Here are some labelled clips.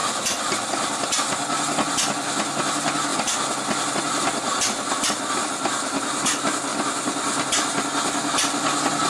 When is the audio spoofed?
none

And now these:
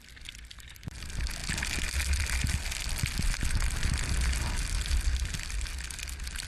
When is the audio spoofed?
none

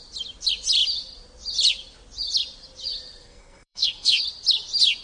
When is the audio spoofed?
3.2-4.2 (codec, SNAC)

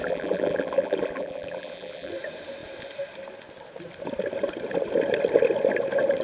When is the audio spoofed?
0.0-2.1 (vocoder, BigVGAN v2)